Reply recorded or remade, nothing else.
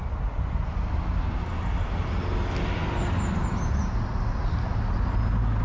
recorded